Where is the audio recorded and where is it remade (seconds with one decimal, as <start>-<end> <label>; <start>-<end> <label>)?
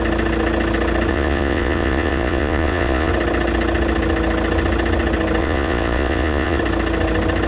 0.0-1.1 recorded; 1.1-3.1 remade; 3.1-5.4 recorded; 5.4-6.6 remade; 6.6-7.5 recorded